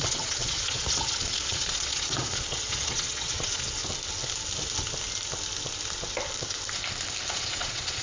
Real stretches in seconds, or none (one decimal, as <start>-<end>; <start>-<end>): 3.8-7.3